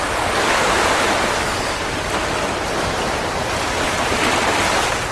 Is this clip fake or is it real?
real